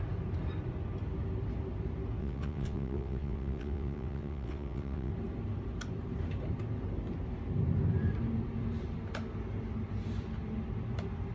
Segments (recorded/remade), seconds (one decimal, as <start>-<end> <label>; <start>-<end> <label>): 0.0-2.2 recorded; 2.2-5.1 remade; 5.1-11.3 recorded